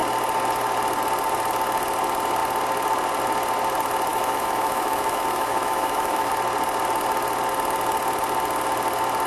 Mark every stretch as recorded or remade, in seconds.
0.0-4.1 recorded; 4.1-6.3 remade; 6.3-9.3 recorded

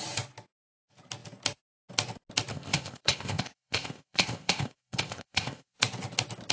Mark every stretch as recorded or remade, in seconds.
0.0-2.5 recorded; 2.5-5.8 remade; 5.8-6.5 recorded

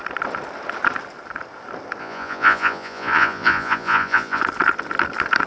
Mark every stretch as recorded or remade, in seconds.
0.0-2.0 recorded; 2.0-4.4 remade; 4.4-5.5 recorded

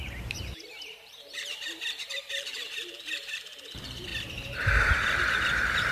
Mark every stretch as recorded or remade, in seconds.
0.0-4.1 remade; 4.1-4.9 recorded; 4.9-5.9 remade

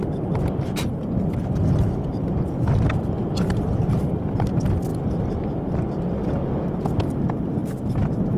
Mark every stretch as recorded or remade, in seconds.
0.0-3.8 recorded; 3.8-4.5 remade; 4.5-8.4 recorded

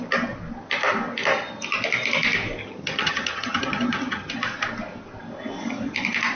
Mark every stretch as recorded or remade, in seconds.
0.0-2.6 recorded; 2.6-4.3 remade; 4.3-6.4 recorded

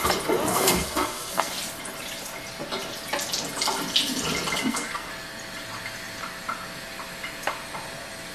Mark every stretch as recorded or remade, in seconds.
0.0-0.5 recorded; 0.5-1.5 remade; 1.5-4.6 recorded; 4.6-5.1 remade; 5.1-8.3 recorded

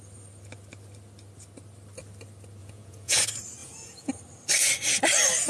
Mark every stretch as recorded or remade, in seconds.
0.0-2.6 recorded; 2.6-3.2 remade; 3.2-3.6 recorded; 3.6-4.1 remade; 4.1-5.5 recorded